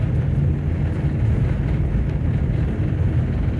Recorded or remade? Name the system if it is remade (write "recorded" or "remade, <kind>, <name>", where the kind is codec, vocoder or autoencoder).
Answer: recorded